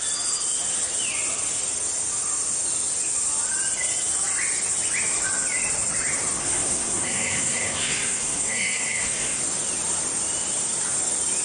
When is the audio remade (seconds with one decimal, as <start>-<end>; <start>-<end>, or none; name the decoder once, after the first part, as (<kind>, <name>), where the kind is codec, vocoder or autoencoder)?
6.4-9.4 (codec, SNAC)